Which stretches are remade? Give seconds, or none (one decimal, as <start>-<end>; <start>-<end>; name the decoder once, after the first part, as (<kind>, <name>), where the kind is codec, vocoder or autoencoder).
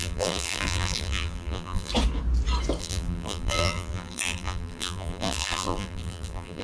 0.0-1.9 (vocoder, BigVGAN v2); 2.8-6.6